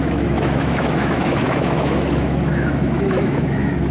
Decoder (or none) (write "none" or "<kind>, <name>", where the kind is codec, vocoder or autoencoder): autoencoder, DAC-VAE